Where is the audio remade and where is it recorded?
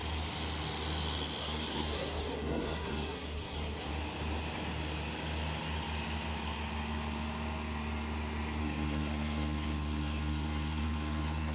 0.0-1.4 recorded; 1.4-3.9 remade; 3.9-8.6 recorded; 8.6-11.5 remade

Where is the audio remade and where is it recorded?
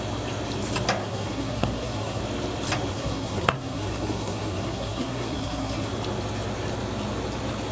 0.0-1.0 recorded; 1.0-2.2 remade; 2.2-2.9 recorded; 2.9-5.9 remade; 5.9-7.7 recorded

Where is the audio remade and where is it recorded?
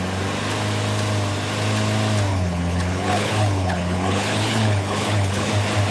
0.0-2.3 recorded; 2.3-5.5 remade; 5.5-5.9 recorded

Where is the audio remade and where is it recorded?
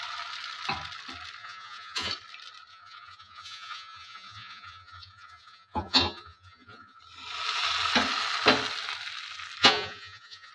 0.0-1.4 recorded; 1.4-2.1 remade; 2.1-2.7 recorded; 2.7-7.0 remade; 7.0-9.6 recorded; 9.6-10.5 remade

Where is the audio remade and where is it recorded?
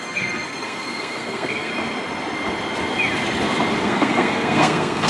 0.0-1.7 remade; 1.7-3.8 recorded; 3.8-5.1 remade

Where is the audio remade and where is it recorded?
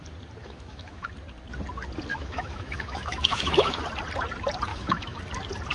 0.0-0.4 recorded; 0.4-1.1 remade; 1.1-2.1 recorded; 2.1-3.8 remade; 3.8-4.7 recorded; 4.7-5.2 remade; 5.2-5.7 recorded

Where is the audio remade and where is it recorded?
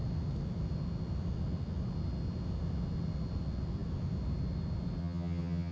0.0-5.0 recorded; 5.0-5.7 remade